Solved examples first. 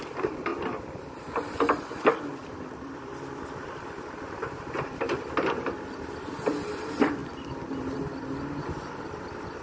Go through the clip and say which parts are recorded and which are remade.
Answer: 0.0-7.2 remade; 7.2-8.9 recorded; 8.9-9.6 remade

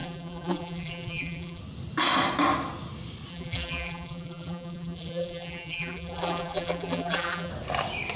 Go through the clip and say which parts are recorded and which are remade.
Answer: 0.0-1.6 remade; 1.6-3.3 recorded; 3.3-7.5 remade; 7.5-8.2 recorded